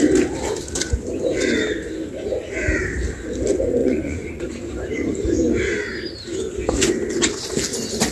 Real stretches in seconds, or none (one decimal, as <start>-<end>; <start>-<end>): 0.0-3.8; 4.4-8.1